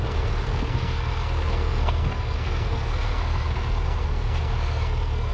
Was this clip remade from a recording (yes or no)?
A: yes